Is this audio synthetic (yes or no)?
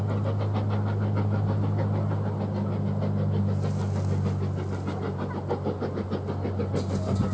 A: no